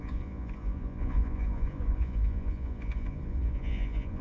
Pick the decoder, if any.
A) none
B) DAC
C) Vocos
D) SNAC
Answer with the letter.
C